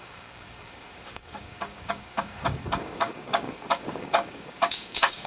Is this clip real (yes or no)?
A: no